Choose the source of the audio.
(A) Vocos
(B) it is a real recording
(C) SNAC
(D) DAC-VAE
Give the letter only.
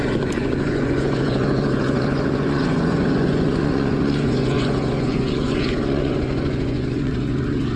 A